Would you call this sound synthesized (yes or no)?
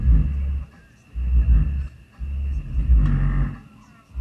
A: no